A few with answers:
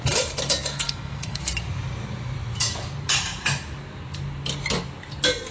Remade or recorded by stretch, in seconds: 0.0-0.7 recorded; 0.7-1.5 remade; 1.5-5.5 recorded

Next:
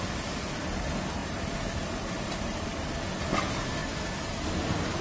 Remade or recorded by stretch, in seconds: 0.0-1.2 recorded; 1.2-2.9 remade; 2.9-5.0 recorded

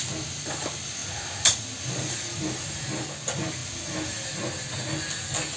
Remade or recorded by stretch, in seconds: 0.0-5.6 recorded

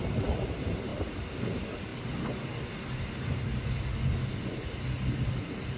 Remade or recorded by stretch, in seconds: 0.0-5.8 recorded